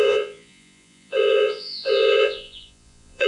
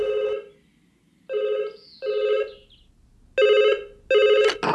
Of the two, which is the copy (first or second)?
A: first